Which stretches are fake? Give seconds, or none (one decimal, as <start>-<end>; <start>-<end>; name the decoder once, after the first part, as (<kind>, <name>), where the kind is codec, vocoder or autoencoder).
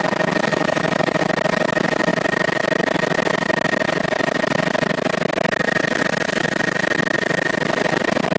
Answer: 0.5-1.2 (autoencoder, DAC-VAE)